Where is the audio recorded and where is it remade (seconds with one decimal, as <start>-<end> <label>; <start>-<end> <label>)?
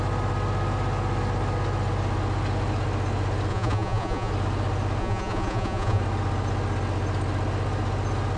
0.0-3.5 recorded; 3.5-4.3 remade; 4.3-5.0 recorded; 5.0-6.0 remade; 6.0-8.4 recorded